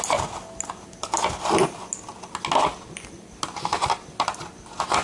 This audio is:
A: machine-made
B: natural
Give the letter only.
B